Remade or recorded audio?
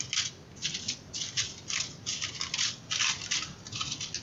recorded